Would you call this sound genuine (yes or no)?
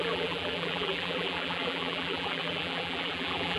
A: no